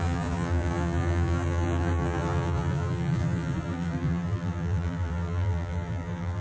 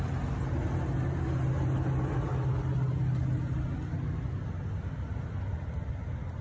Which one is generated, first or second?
first